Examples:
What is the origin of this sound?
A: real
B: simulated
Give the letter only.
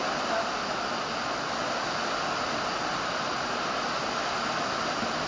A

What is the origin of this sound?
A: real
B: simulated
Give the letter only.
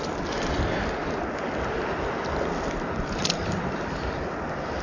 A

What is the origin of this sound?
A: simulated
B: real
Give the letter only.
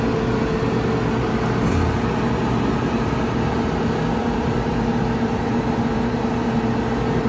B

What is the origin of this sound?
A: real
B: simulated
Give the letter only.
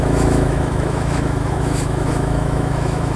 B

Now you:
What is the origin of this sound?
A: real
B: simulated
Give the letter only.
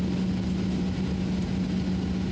A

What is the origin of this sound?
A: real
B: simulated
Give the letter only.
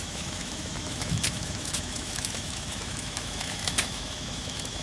B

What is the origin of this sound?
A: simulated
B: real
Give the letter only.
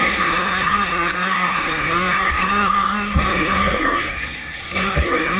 A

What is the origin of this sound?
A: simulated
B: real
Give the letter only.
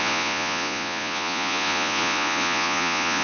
A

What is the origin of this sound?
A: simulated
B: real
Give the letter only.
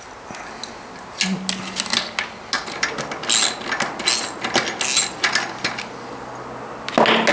B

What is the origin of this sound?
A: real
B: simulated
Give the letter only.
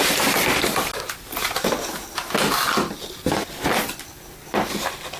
A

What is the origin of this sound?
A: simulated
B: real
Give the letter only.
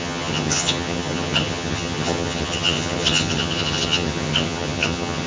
A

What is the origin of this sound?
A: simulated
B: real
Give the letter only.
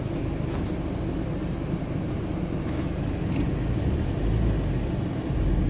B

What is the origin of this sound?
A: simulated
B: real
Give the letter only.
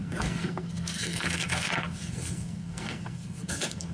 A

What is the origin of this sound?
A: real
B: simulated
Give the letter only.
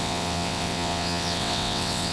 B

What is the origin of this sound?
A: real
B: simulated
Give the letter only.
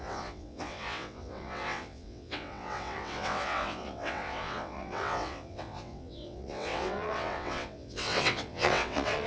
B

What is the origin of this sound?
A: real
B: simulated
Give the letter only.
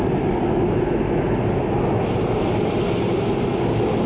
A